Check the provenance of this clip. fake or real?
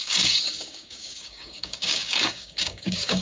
fake